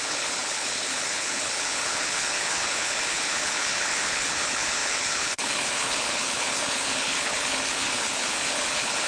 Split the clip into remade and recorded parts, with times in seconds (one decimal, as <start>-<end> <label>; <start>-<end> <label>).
0.0-9.1 remade